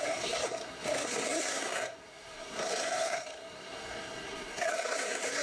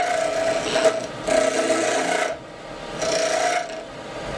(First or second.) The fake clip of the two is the first